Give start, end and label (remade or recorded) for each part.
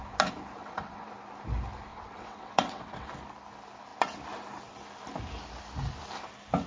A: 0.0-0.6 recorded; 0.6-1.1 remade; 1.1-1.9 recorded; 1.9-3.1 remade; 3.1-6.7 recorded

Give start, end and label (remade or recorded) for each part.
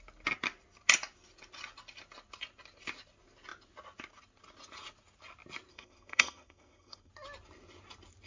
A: 0.0-5.7 recorded; 5.7-7.1 remade; 7.1-8.3 recorded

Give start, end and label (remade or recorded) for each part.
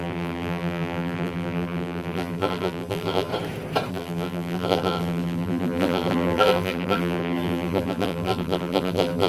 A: 0.0-3.3 remade; 3.3-3.9 recorded; 3.9-9.3 remade